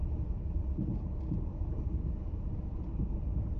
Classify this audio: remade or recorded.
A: remade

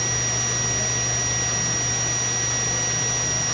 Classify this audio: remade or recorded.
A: recorded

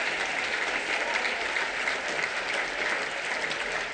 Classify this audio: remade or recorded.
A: remade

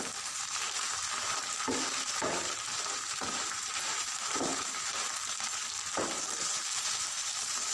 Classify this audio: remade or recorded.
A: remade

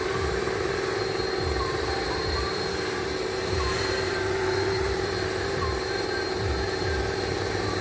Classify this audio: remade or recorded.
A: remade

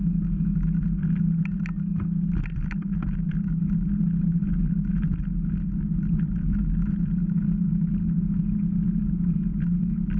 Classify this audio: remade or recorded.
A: recorded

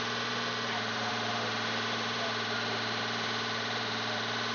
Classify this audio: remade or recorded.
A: remade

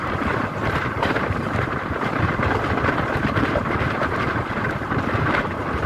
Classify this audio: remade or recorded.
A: remade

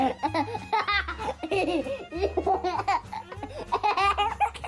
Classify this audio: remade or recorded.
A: recorded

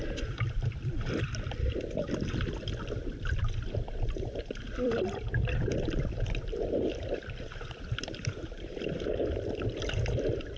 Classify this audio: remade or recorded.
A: remade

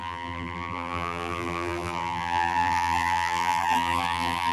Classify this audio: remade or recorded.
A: remade